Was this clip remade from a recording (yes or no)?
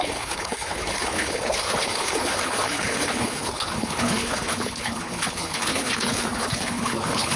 yes